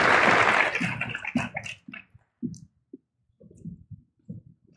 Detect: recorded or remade recorded